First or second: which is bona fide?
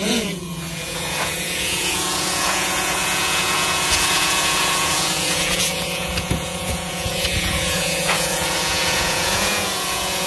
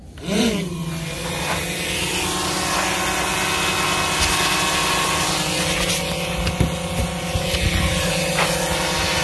second